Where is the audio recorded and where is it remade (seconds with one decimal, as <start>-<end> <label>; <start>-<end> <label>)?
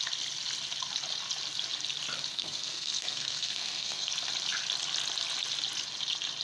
0.0-2.3 recorded; 2.3-4.1 remade; 4.1-6.4 recorded